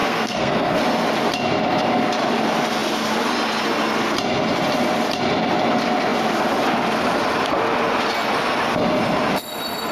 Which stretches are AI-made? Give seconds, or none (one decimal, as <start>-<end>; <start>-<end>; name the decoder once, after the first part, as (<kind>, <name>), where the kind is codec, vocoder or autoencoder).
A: 0.0-0.8 (codec, SNAC)